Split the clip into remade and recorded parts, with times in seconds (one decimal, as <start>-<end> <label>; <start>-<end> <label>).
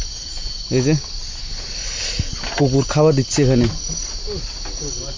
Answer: 0.0-5.2 recorded